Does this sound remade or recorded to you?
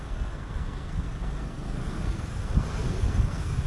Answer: remade